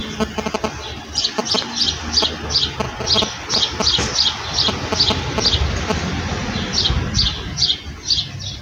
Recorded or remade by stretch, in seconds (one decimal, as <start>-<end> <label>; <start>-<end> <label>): 0.0-8.6 recorded